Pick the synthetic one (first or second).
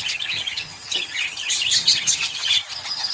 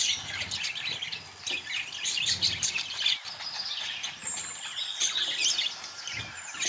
first